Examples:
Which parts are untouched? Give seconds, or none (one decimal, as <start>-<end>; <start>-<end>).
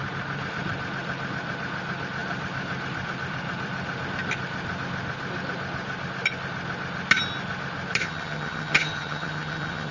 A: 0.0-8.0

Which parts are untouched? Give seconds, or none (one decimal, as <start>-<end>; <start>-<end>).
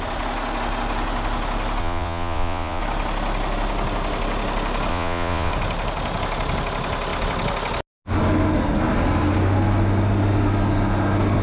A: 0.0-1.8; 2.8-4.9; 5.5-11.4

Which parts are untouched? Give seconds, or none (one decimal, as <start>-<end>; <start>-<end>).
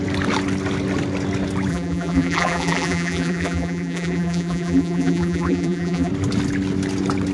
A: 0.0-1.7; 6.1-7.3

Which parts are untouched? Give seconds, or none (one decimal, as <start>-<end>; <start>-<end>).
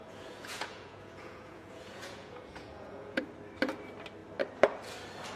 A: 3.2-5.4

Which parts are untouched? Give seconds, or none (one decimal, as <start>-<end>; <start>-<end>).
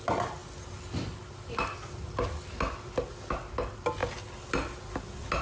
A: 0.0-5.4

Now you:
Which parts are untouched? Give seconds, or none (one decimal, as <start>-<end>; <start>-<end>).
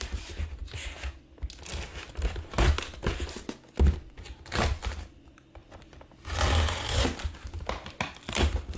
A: 0.0-5.6; 6.4-8.8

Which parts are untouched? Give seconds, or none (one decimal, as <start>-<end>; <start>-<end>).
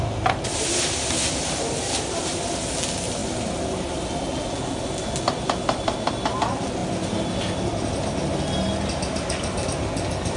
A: 0.0-10.4